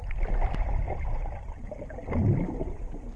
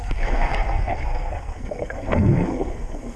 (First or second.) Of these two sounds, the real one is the first